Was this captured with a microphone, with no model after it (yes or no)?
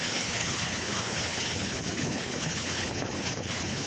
no